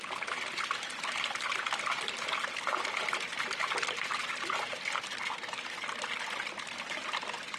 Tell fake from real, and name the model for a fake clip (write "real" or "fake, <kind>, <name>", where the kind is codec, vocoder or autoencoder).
real